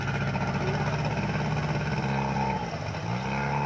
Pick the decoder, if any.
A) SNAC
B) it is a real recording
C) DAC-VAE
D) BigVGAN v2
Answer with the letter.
B